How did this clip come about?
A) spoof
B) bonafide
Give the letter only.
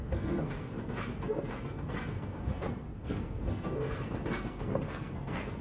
A